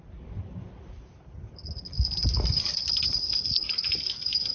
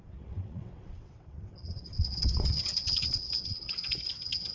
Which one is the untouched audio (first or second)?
first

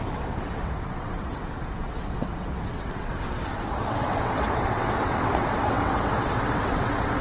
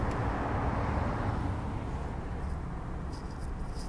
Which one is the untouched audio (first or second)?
second